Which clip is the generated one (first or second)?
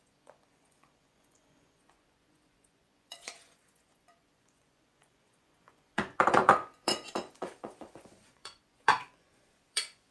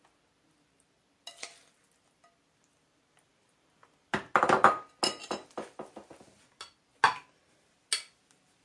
first